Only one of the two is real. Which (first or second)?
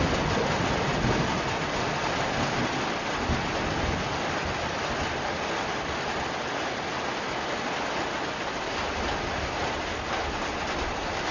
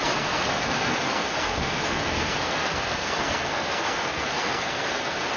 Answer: first